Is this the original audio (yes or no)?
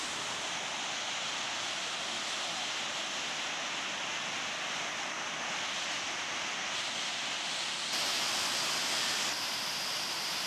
yes